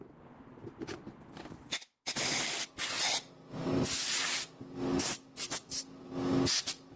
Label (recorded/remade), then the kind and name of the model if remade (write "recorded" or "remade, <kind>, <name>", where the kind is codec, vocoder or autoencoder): recorded